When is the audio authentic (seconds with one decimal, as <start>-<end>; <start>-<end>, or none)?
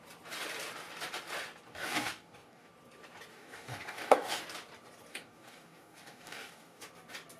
0.0-1.7; 2.7-3.3; 4.4-5.1; 6.8-7.4